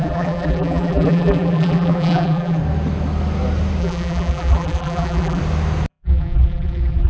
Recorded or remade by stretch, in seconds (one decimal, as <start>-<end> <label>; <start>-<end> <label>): 0.0-2.6 remade; 2.6-3.8 recorded; 3.8-5.4 remade; 5.4-5.9 recorded; 5.9-7.1 remade